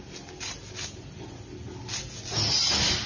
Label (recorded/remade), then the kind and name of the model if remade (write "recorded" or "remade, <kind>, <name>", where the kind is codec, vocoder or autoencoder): recorded